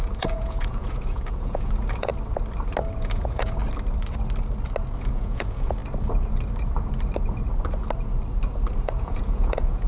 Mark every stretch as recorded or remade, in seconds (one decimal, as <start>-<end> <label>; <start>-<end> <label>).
0.0-2.1 remade; 2.1-3.0 recorded; 3.0-3.6 remade; 3.6-5.0 recorded; 5.0-5.8 remade; 5.8-8.7 recorded; 8.7-9.9 remade